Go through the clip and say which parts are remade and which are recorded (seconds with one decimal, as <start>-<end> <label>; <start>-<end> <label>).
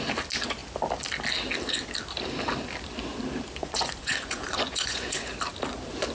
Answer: 0.0-3.6 recorded; 3.6-5.3 remade; 5.3-6.1 recorded